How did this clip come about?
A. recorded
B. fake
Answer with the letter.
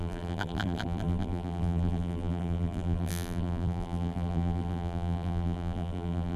B